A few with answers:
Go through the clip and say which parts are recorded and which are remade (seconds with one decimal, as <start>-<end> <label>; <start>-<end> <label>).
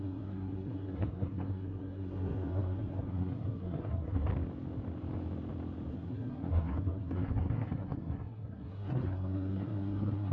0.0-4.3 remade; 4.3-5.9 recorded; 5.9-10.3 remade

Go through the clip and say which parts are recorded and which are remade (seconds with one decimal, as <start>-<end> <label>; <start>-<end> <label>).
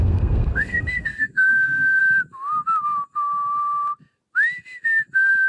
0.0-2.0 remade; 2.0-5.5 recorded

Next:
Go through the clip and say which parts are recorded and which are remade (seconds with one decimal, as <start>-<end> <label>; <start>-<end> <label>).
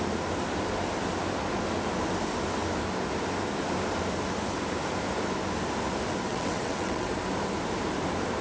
0.0-6.3 recorded; 6.3-7.1 remade; 7.1-8.4 recorded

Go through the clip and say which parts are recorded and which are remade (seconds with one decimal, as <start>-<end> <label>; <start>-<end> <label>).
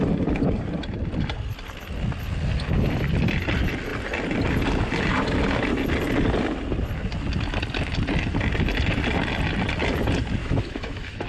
0.0-10.4 recorded; 10.4-11.3 remade